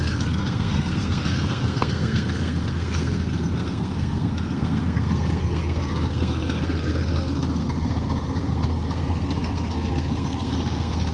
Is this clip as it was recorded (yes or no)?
no